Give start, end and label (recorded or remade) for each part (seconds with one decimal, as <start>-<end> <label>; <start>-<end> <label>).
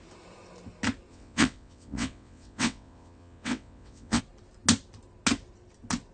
0.0-1.1 recorded; 1.1-4.2 remade; 4.2-6.1 recorded